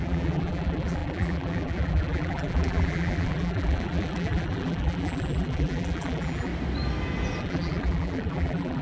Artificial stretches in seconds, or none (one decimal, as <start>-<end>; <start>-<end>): 0.0-6.5; 7.4-8.8